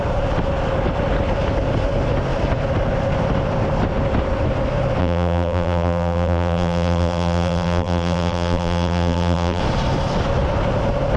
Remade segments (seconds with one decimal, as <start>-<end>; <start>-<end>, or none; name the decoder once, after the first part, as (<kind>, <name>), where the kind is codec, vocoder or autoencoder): 5.0-9.6 (vocoder, BigVGAN v2)